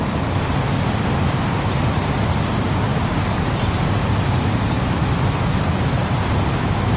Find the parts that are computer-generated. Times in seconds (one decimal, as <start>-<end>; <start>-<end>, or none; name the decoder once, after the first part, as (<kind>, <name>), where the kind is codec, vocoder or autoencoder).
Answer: none